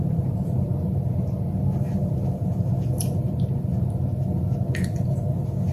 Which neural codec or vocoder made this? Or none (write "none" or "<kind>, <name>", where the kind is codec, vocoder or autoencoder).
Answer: vocoder, BigVGAN v2